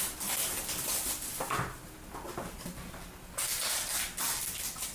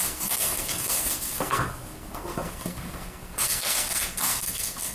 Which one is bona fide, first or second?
first